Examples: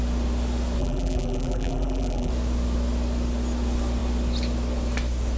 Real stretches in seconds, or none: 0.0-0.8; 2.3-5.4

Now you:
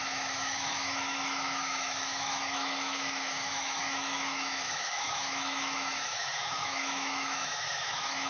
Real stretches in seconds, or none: none

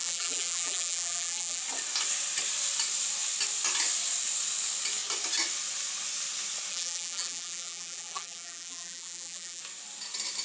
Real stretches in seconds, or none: 1.6-6.7; 9.6-10.4